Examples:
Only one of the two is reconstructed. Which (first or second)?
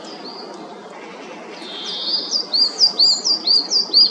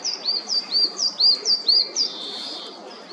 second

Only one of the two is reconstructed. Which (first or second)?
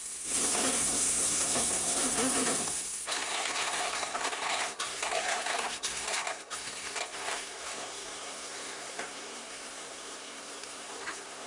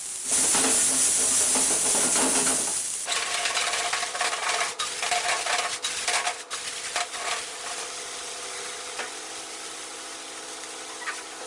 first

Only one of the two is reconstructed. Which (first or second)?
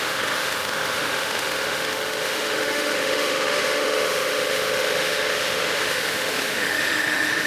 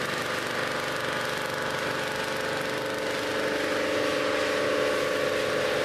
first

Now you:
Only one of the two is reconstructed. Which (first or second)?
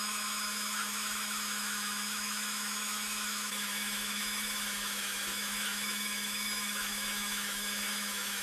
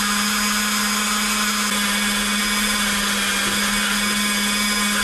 first